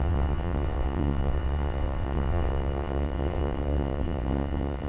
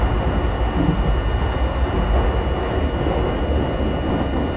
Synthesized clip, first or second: first